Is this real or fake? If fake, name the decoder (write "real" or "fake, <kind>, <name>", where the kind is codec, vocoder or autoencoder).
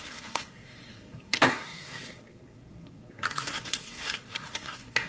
fake, codec, SNAC